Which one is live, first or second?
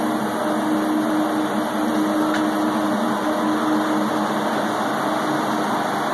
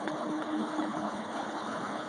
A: first